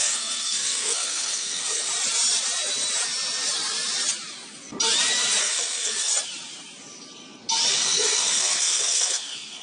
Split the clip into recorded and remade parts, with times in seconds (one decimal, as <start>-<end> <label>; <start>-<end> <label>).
0.0-1.9 remade; 1.9-5.4 recorded; 5.4-6.1 remade; 6.1-7.7 recorded; 7.7-9.6 remade